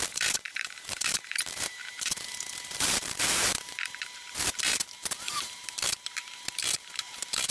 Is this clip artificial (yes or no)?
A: yes